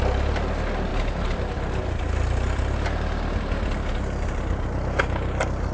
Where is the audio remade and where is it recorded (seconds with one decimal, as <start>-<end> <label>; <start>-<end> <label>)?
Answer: 0.0-5.7 recorded